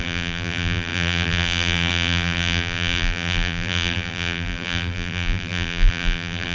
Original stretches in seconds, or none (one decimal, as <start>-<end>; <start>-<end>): none